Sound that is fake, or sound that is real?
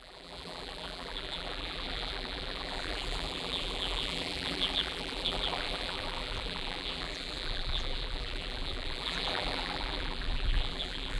fake